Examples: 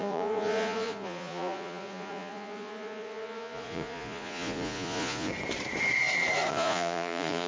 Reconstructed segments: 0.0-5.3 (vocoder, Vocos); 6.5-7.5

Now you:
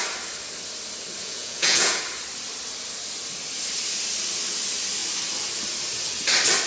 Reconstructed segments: 1.2-2.0 (vocoder, Vocos)